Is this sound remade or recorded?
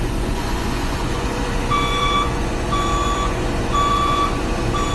remade